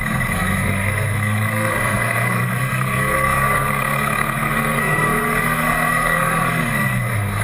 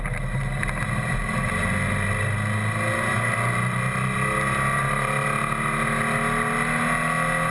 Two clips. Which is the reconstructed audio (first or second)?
first